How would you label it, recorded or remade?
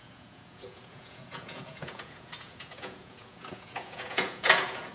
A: remade